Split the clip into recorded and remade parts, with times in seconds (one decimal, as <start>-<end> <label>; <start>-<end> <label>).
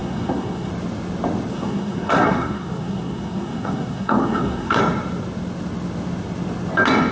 0.0-0.7 remade; 0.7-1.5 recorded; 1.5-4.8 remade; 4.8-7.1 recorded